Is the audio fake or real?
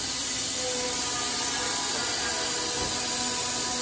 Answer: real